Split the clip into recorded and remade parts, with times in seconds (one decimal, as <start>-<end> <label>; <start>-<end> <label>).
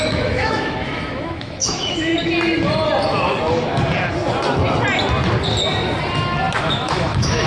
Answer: 0.0-2.1 remade; 2.1-6.6 recorded; 6.6-7.5 remade